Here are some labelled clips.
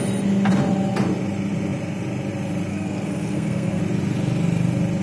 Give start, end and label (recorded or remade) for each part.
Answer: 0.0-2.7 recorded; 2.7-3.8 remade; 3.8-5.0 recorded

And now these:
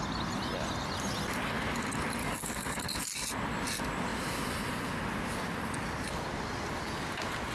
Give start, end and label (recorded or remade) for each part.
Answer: 0.0-2.2 recorded; 2.2-2.9 remade; 2.9-7.5 recorded

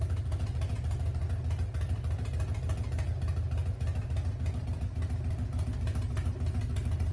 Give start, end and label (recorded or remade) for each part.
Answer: 0.0-7.1 recorded

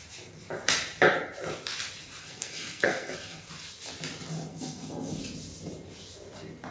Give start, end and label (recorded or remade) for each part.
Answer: 0.0-2.2 recorded; 2.2-3.5 remade; 3.5-4.5 recorded; 4.5-5.2 remade; 5.2-6.7 recorded

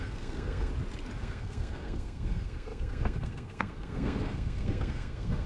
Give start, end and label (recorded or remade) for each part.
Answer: 0.0-0.7 remade; 0.7-1.2 recorded; 1.2-5.5 remade